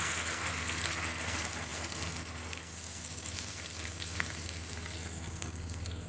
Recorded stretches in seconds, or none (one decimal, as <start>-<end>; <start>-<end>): none